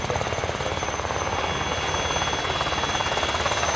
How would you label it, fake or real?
real